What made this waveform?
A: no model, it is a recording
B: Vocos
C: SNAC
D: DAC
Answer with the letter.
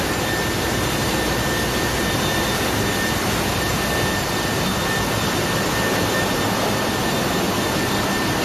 A